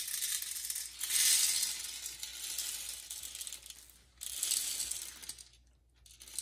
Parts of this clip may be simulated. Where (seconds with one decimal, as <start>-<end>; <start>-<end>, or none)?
none